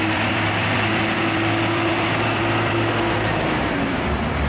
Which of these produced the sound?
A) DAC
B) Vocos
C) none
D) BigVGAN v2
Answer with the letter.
D